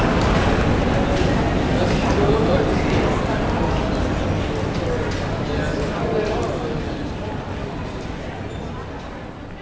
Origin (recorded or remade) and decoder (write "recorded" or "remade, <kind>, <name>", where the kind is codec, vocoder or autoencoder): recorded